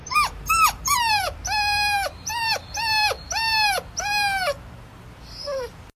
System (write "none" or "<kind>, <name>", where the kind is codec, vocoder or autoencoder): vocoder, BigVGAN v2